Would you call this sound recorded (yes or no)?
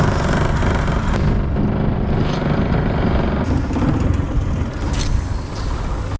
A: yes